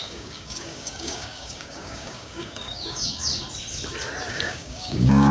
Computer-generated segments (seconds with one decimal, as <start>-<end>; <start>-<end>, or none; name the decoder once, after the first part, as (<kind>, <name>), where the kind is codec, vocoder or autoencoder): 0.0-3.3 (codec, DAC); 4.3-5.3